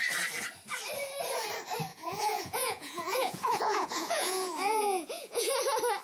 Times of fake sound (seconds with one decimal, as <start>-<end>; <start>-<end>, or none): 1.9-5.5